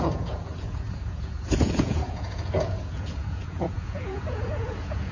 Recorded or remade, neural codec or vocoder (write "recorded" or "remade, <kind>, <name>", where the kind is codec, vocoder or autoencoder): remade, vocoder, Vocos